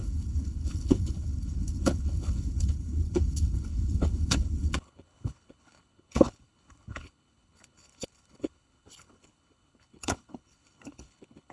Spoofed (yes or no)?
yes